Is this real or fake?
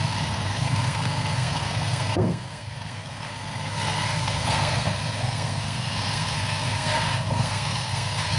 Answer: fake